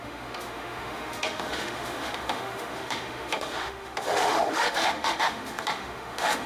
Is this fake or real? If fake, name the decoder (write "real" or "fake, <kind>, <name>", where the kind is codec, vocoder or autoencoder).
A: fake, autoencoder, DAC-VAE